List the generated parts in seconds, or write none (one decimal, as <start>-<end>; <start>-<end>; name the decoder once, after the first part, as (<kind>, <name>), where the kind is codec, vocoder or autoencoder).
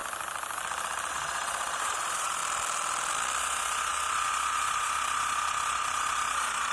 1.1-2.4 (vocoder, Vocos); 3.4-6.7